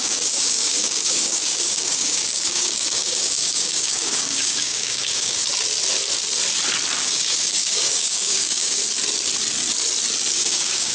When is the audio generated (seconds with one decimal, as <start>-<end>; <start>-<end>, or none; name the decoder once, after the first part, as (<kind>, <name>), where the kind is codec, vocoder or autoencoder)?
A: 0.0-5.4 (codec, DAC); 7.0-8.8; 10.3-10.9